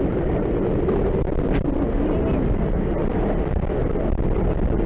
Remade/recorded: recorded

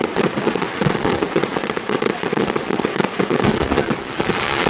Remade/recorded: remade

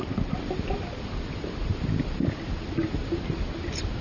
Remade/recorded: recorded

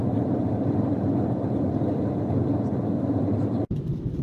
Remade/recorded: recorded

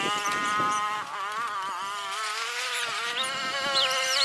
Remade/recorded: recorded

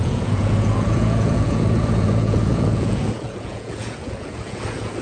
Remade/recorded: remade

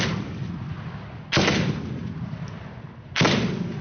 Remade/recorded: recorded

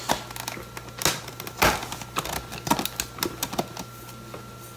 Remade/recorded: recorded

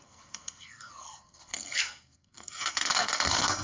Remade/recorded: remade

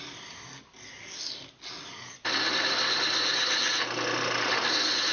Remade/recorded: recorded